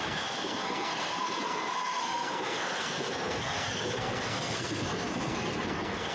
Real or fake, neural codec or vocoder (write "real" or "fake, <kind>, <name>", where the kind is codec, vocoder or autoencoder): fake, codec, SNAC